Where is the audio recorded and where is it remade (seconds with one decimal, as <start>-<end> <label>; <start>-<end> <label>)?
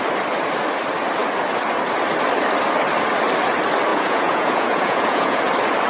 0.0-3.9 recorded; 3.9-5.4 remade; 5.4-5.9 recorded